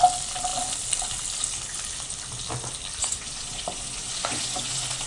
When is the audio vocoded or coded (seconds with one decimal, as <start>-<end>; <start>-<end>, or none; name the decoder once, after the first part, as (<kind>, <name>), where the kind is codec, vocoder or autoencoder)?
3.0-5.1 (vocoder, Vocos)